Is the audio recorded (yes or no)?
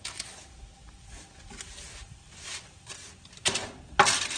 yes